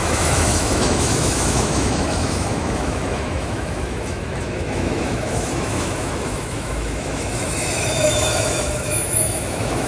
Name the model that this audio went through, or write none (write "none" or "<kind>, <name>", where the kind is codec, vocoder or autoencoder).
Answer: autoencoder, DAC-VAE